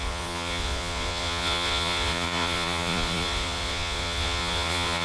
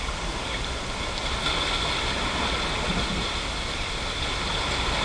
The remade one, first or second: first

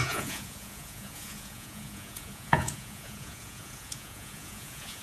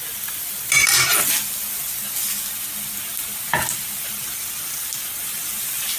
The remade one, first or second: first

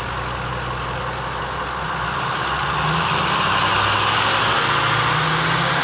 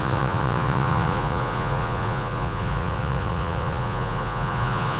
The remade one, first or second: second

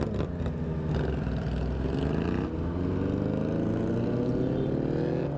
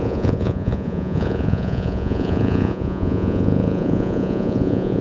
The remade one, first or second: second